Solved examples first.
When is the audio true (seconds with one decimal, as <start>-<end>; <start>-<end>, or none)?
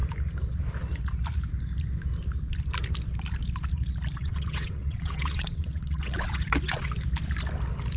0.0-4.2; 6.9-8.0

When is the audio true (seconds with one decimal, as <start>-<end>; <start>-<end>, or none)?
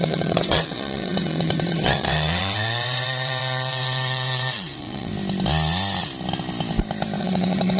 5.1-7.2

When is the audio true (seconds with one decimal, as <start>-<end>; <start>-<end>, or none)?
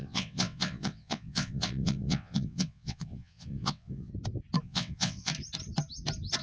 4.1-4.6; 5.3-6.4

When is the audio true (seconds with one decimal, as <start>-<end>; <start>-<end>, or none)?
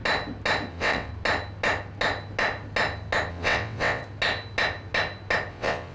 0.0-0.7; 1.1-3.3; 4.0-5.5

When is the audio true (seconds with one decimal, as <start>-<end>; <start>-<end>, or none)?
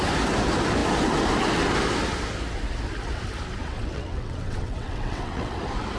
0.0-3.6; 5.6-6.0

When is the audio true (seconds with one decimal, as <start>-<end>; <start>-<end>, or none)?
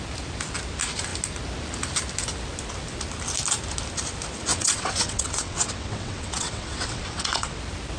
0.0-4.5; 7.6-8.0